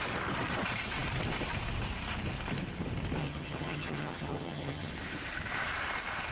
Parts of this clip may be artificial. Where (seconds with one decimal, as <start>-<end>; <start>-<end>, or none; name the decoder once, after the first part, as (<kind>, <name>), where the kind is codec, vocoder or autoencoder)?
3.2-4.9 (vocoder, HiFi-GAN)